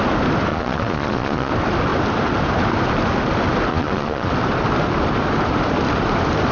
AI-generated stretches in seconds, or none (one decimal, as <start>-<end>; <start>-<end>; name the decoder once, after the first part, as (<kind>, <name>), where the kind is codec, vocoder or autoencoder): 0.5-1.5 (vocoder, Vocos); 3.7-4.3